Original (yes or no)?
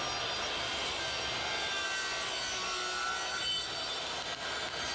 yes